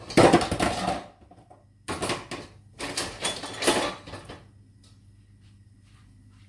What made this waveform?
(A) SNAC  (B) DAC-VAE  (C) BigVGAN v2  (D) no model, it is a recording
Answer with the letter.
D